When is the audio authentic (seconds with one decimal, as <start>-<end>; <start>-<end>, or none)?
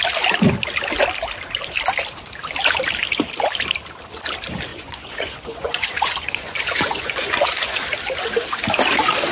0.0-4.7; 7.8-9.3